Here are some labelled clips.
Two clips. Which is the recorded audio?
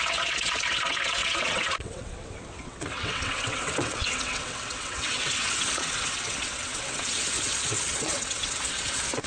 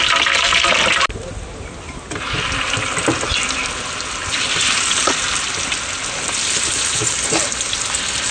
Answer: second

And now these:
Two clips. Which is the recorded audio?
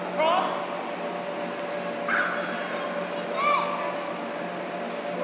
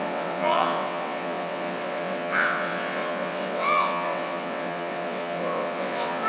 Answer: first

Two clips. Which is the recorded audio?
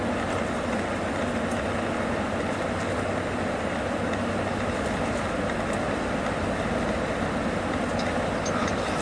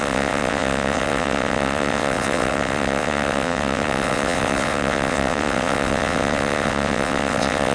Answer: first